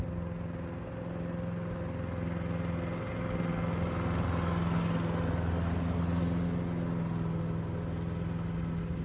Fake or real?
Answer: real